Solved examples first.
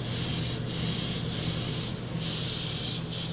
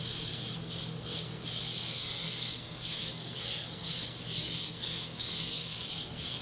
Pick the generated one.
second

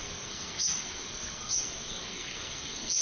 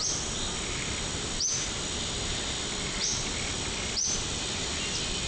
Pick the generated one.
first